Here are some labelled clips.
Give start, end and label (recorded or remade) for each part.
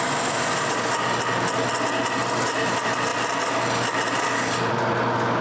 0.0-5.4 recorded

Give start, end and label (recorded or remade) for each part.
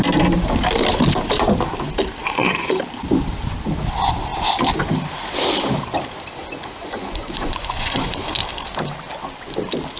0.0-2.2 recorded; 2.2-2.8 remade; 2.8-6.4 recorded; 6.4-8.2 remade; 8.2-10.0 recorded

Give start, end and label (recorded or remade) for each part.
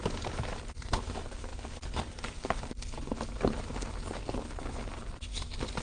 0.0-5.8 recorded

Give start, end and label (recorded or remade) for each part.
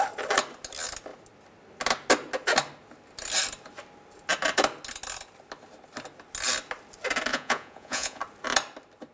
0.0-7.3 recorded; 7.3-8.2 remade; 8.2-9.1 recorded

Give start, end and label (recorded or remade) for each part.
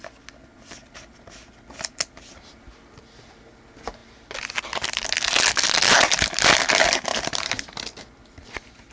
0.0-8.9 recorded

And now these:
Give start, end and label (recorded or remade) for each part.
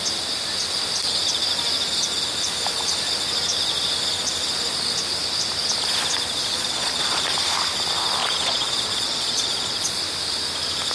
0.0-6.4 recorded; 6.4-7.2 remade; 7.2-8.2 recorded; 8.2-10.0 remade; 10.0-10.9 recorded